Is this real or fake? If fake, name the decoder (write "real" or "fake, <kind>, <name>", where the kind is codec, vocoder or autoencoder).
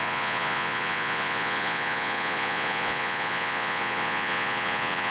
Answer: fake, vocoder, Vocos